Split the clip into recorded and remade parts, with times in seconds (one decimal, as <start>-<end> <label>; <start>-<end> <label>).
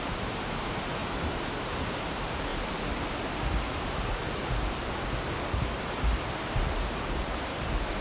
0.0-1.0 remade; 1.0-1.8 recorded; 1.8-2.5 remade; 2.5-5.6 recorded; 5.6-8.0 remade